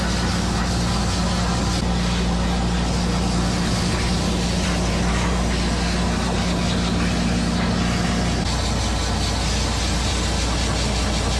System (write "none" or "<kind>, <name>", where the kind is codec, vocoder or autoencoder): none